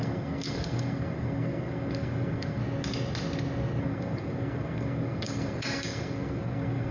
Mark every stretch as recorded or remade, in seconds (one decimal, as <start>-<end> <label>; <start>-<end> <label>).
0.0-2.6 remade; 2.6-3.8 recorded; 3.8-6.9 remade